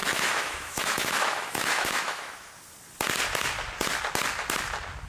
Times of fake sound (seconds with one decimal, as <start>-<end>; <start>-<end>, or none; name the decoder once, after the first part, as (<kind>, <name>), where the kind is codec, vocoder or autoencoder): 0.0-2.5 (autoencoder, DAC-VAE)